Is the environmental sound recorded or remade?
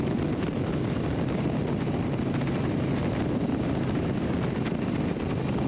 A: recorded